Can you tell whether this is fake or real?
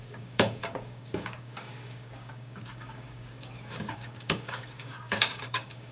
fake